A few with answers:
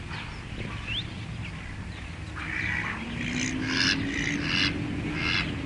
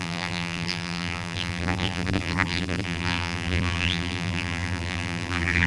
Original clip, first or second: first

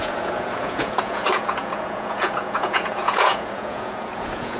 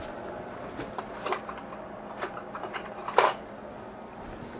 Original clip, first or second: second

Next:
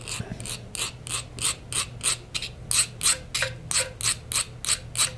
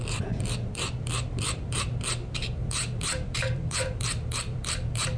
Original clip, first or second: first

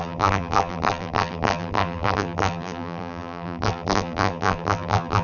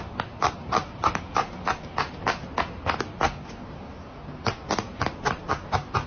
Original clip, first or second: second